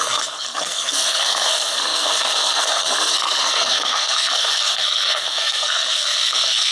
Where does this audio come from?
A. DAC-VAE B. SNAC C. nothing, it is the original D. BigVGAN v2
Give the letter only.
B